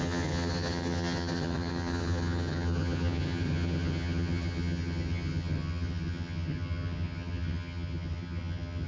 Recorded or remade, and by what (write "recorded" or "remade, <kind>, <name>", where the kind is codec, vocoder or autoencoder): remade, vocoder, HiFi-GAN